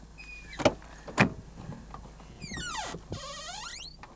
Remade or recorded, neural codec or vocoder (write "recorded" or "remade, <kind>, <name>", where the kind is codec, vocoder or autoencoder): recorded